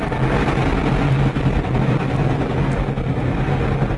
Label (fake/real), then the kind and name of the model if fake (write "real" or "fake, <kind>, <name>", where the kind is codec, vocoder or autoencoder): real